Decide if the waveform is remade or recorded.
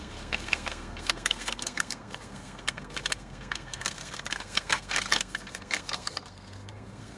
remade